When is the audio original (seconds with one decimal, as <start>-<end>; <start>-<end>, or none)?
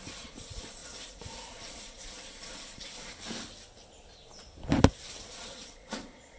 3.1-5.3